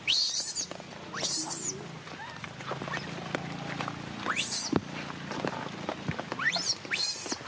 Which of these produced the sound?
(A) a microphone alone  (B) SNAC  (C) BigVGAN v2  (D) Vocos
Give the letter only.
A